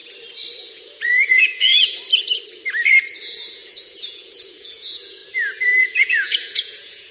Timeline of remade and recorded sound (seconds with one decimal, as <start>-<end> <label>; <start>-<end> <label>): 0.0-0.7 recorded; 0.7-2.0 remade; 2.0-3.2 recorded; 3.2-5.2 remade; 5.2-5.8 recorded; 5.8-7.1 remade